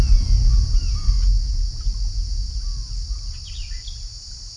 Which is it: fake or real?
real